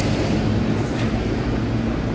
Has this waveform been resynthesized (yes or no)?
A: no